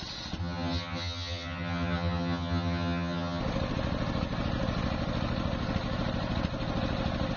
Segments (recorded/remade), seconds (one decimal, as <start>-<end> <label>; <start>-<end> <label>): 0.0-0.4 recorded; 0.4-3.4 remade; 3.4-7.4 recorded